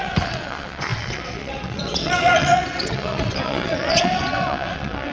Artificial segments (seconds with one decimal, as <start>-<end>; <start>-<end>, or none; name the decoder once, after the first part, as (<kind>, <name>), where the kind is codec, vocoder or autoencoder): 0.0-5.1 (vocoder, WaveNeXt)